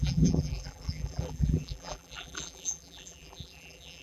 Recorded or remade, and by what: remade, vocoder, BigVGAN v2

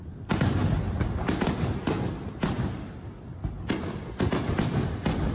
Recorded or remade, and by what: recorded